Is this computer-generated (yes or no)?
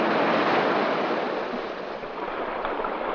no